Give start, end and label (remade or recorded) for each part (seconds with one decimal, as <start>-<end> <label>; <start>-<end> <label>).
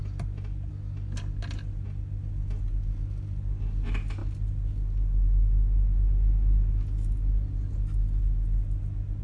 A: 0.0-9.2 recorded